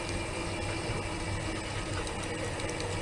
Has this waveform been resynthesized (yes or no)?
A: no